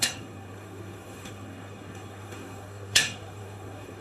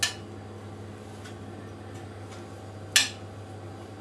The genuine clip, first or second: second